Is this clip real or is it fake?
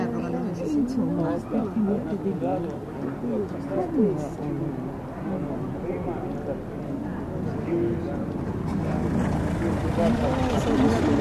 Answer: real